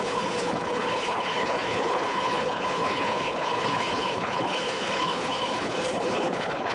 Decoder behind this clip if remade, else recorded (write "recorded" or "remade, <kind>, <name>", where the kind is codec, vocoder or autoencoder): remade, codec, HILCodec